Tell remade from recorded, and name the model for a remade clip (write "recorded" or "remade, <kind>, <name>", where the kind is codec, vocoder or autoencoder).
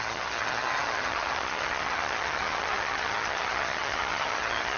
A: remade, vocoder, HiFi-GAN